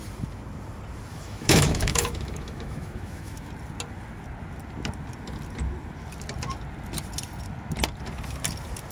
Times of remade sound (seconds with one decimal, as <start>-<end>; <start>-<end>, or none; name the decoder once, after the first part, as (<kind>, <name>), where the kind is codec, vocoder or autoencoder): 1.1-3.5 (autoencoder, DAC-VAE)